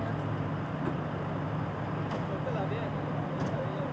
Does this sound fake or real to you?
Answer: real